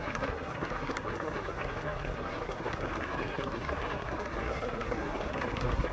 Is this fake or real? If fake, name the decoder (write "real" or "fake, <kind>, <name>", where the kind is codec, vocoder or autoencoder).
fake, codec, SNAC